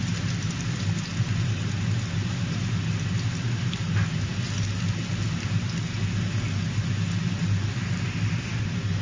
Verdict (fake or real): real